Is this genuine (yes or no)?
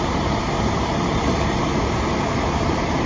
yes